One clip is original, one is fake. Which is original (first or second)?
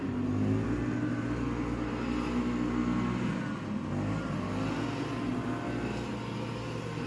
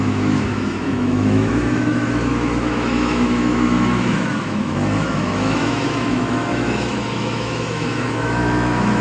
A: first